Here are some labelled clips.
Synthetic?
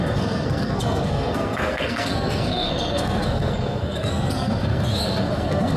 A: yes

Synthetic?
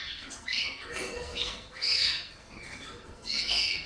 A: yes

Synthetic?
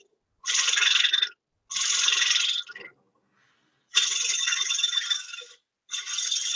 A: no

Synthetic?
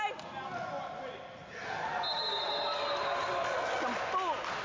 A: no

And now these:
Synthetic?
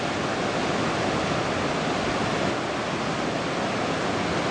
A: no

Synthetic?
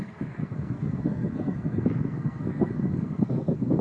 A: yes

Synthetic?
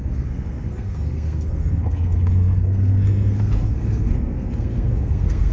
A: yes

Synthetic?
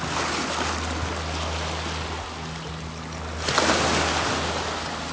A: no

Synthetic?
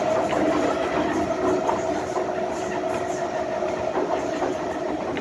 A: no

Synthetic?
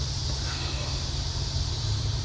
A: no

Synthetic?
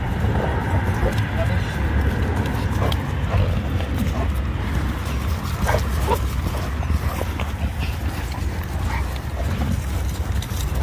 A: no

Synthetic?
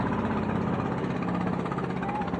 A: no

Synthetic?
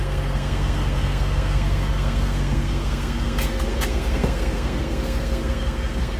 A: yes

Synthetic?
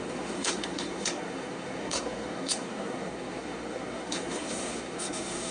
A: yes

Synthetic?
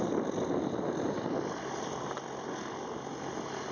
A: no